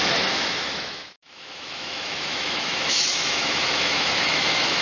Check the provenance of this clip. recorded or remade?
remade